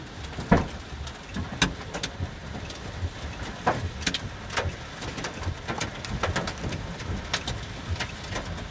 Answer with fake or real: real